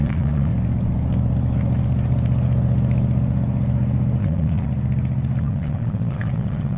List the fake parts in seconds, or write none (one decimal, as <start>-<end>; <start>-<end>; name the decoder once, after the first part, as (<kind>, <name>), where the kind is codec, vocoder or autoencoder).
0.0-0.5 (vocoder, Vocos); 4.2-4.7; 5.4-6.8